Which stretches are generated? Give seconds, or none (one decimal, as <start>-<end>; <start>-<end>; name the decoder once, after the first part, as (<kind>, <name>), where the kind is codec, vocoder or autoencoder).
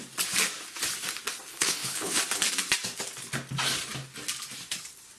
1.5-2.2 (codec, HILCodec)